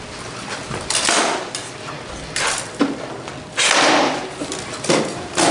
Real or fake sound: real